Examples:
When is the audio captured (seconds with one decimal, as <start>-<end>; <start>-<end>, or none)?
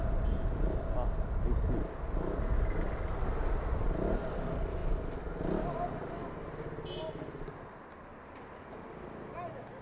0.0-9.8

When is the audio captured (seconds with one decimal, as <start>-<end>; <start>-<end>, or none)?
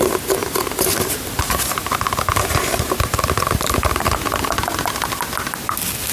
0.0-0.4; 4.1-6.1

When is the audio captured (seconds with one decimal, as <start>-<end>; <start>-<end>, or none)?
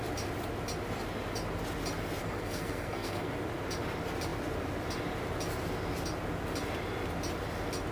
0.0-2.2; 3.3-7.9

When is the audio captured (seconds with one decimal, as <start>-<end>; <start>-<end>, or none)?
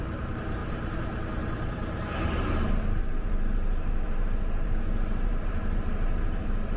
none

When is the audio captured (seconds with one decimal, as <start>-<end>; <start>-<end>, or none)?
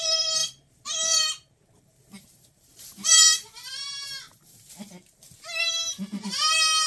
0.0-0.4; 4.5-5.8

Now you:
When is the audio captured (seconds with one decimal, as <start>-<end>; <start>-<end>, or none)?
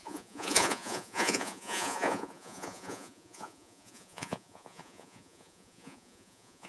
none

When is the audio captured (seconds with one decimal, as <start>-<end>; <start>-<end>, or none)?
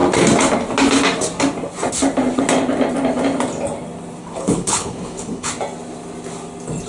0.0-4.2; 5.5-6.9